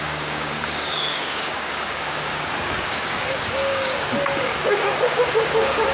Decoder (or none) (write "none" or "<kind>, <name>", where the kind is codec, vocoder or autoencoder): codec, DAC